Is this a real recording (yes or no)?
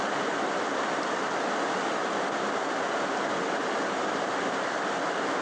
yes